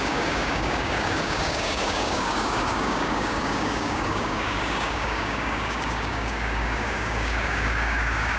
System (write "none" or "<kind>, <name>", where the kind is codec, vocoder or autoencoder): codec, DAC